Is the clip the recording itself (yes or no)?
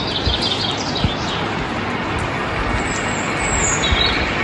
yes